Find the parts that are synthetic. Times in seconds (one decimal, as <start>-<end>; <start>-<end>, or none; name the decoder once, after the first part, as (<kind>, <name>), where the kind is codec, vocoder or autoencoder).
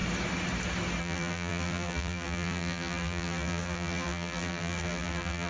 1.0-5.5 (vocoder, BigVGAN v2)